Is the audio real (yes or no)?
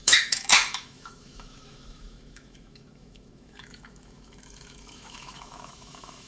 no